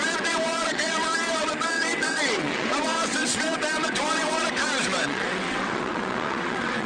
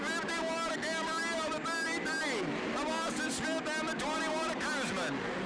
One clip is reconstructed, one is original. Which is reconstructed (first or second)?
first